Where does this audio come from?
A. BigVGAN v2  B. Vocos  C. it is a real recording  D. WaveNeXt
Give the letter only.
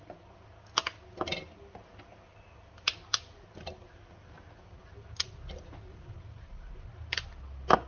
C